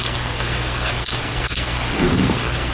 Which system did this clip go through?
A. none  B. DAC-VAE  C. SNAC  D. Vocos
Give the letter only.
C